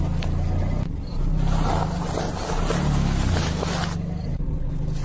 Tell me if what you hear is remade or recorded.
recorded